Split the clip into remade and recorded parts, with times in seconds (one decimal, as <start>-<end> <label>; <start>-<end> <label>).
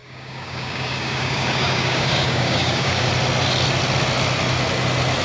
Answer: 0.0-3.1 remade; 3.1-5.2 recorded